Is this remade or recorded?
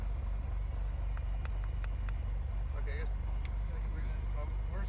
recorded